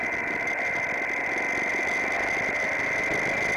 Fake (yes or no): no